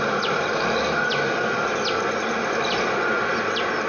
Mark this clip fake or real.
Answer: real